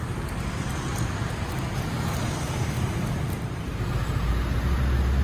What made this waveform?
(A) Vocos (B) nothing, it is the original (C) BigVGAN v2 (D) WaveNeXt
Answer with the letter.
B